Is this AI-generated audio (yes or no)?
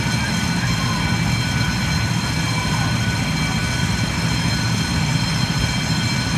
no